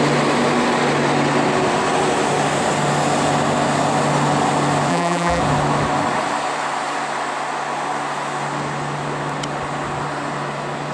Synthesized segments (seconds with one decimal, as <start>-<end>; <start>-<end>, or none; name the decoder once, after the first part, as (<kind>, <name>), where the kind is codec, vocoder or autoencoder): 4.9-5.4 (vocoder, BigVGAN v2)